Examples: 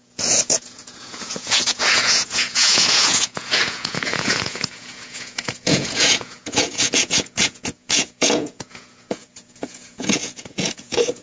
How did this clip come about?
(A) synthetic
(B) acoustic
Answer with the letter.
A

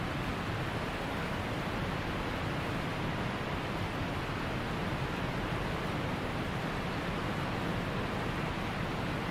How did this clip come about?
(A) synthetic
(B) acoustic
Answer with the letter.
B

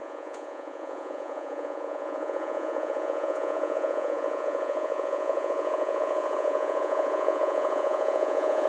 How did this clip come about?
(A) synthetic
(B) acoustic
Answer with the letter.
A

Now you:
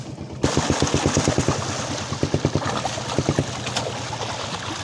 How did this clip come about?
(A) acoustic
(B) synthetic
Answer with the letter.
A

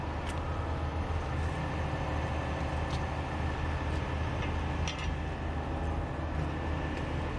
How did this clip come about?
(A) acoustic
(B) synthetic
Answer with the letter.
A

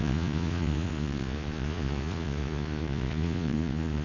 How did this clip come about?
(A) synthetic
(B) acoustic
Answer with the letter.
A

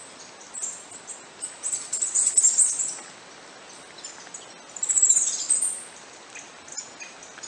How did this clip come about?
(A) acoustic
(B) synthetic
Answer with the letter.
A